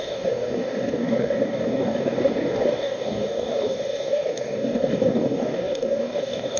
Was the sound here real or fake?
fake